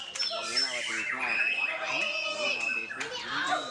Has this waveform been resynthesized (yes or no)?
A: no